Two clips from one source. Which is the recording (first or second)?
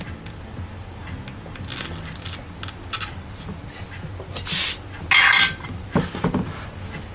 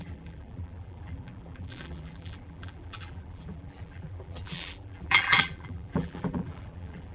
first